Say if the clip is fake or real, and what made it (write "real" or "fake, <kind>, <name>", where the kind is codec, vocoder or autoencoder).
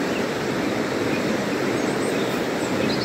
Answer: real